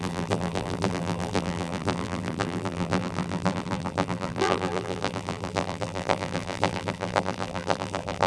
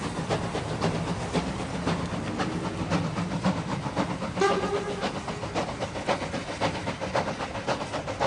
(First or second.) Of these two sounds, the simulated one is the first